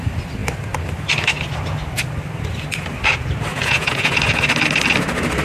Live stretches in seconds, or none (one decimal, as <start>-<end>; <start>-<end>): 0.0-3.5; 4.1-5.4